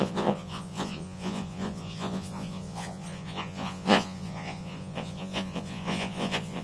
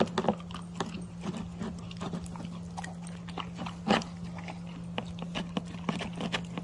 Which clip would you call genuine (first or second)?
second